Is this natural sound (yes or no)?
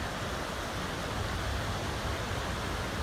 yes